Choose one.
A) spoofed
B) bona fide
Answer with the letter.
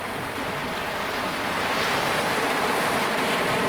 B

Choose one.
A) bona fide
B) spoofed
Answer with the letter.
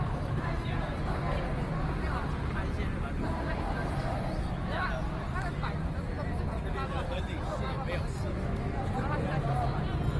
A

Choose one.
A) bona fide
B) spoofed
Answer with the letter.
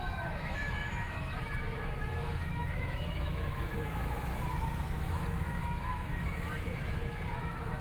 B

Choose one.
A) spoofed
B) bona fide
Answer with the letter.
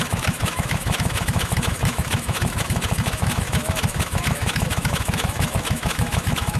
A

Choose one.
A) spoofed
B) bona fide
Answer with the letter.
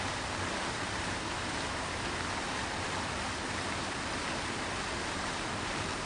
B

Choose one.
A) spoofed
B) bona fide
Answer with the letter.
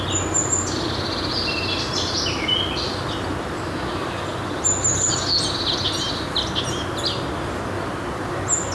B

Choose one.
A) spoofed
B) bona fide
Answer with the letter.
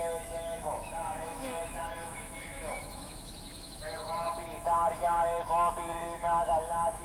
A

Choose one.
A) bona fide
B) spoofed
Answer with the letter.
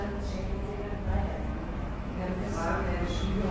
B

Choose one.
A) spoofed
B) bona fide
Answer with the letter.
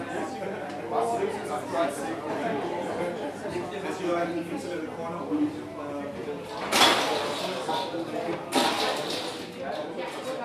B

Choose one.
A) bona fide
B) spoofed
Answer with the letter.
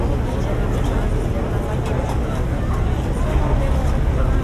A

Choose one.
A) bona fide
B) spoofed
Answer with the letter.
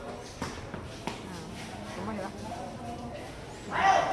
A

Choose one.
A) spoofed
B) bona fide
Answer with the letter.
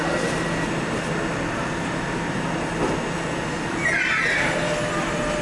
B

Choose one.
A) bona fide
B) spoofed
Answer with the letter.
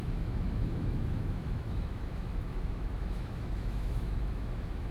B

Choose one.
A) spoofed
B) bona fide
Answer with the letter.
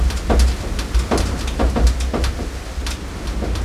B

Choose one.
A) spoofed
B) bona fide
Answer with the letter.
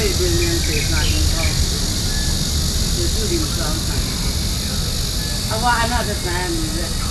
B